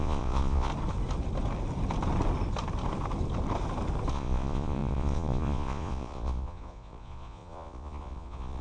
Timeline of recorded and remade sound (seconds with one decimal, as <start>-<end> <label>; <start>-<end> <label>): 0.0-0.7 remade; 0.7-4.1 recorded; 4.1-8.6 remade